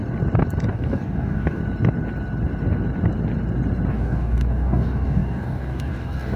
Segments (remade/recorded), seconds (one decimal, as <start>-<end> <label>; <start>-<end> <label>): 0.0-0.7 recorded; 0.7-1.6 remade; 1.6-3.9 recorded; 3.9-6.4 remade